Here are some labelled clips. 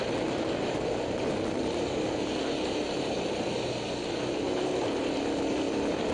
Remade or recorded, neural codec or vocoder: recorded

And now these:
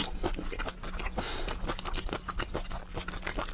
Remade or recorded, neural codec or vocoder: recorded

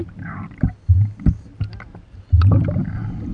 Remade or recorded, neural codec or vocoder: recorded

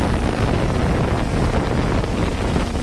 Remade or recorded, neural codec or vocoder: recorded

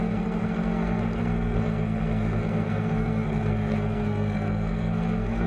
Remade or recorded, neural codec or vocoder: remade, codec, SNAC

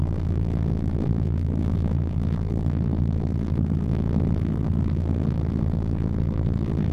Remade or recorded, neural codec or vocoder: remade, codec, SNAC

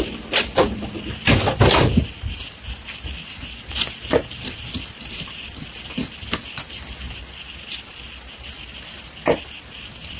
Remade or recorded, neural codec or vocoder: recorded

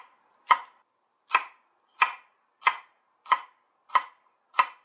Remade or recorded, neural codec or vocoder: recorded